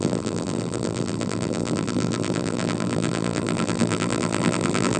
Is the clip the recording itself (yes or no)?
no